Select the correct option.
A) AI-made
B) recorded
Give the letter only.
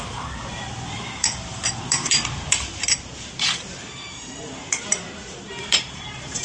A